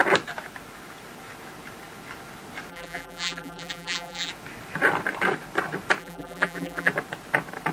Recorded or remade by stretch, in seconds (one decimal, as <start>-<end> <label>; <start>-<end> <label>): 0.0-2.7 recorded; 2.7-4.3 remade; 4.3-6.0 recorded; 6.0-6.9 remade; 6.9-7.7 recorded